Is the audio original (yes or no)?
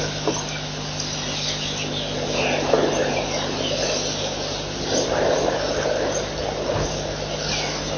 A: yes